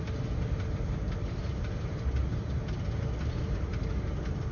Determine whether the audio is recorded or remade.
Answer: recorded